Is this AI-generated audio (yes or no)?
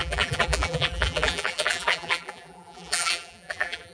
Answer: yes